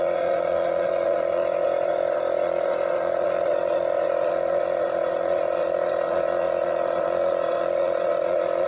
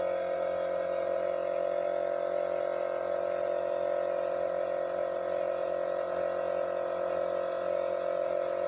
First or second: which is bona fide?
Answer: second